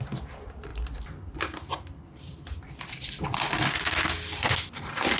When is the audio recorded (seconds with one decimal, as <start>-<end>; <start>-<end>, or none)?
0.0-0.7; 3.8-5.2